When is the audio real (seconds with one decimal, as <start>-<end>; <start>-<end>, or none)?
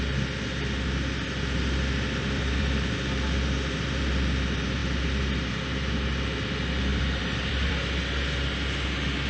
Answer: 0.0-2.2; 2.9-6.9; 7.7-9.3